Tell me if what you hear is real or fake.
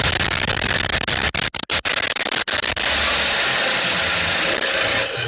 real